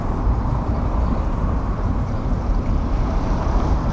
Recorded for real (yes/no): no